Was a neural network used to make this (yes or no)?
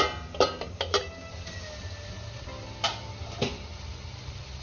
no